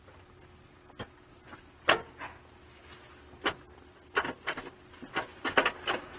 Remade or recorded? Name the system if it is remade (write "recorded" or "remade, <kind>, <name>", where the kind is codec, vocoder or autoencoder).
recorded